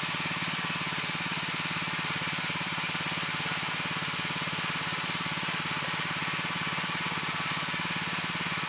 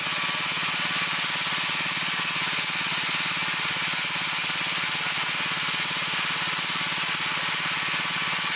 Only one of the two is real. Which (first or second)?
second